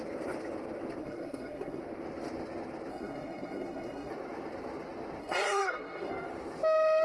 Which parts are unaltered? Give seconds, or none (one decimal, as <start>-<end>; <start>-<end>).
0.0-1.0; 1.8-2.9; 4.1-5.2; 6.1-7.0